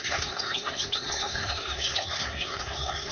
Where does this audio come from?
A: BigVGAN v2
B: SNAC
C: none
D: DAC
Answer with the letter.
B